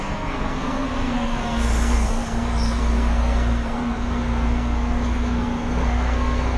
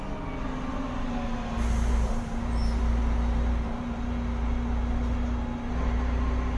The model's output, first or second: first